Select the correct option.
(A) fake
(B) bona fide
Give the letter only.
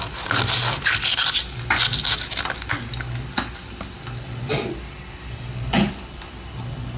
B